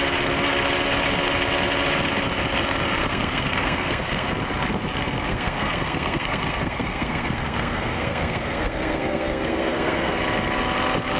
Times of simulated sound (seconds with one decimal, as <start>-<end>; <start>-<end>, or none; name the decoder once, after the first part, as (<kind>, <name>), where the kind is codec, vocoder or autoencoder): 3.0-4.3 (codec, SNAC); 5.3-10.2